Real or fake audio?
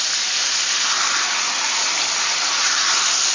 real